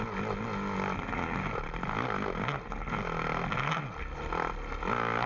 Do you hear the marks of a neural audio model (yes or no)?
no